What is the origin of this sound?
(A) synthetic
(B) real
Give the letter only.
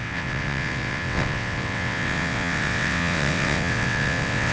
A